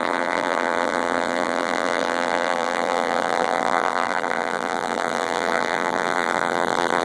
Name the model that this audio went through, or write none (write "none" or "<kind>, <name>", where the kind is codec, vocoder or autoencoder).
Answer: vocoder, BigVGAN v2